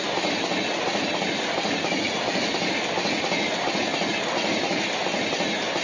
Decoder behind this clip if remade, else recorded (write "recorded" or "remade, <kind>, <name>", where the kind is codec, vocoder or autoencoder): recorded